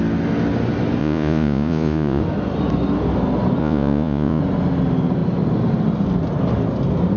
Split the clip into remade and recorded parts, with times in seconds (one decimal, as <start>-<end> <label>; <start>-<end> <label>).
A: 0.0-1.0 recorded; 1.0-2.2 remade; 2.2-3.6 recorded; 3.6-4.4 remade; 4.4-7.2 recorded